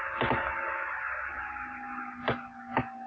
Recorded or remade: recorded